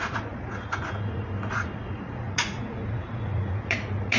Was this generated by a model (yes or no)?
yes